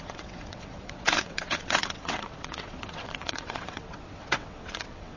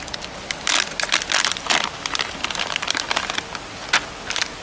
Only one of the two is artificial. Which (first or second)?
first